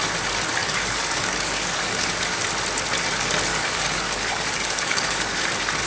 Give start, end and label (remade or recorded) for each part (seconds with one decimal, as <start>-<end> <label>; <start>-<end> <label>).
0.0-0.6 recorded; 0.6-2.1 remade; 2.1-3.5 recorded; 3.5-5.4 remade; 5.4-5.9 recorded